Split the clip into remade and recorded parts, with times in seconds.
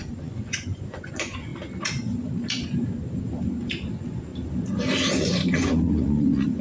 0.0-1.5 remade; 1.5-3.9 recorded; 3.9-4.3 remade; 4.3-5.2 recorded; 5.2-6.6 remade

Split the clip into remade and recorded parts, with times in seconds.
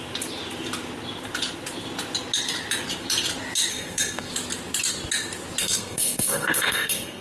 0.0-3.7 recorded; 3.7-4.3 remade; 4.3-5.6 recorded; 5.6-7.2 remade